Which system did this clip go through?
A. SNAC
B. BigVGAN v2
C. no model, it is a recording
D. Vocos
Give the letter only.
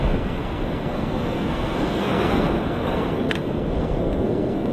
A